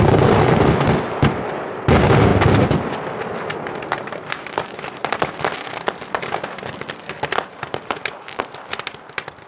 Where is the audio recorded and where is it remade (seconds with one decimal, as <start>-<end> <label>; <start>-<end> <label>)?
0.0-9.5 recorded